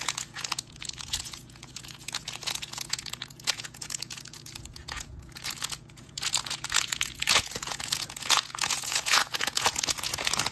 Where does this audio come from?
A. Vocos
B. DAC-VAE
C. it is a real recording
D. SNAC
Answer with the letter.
A